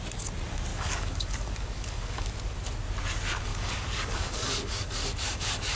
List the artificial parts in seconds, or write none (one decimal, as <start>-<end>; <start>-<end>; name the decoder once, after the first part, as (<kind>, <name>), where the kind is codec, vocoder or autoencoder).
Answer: 0.7-2.3 (codec, DAC); 3.5-5.8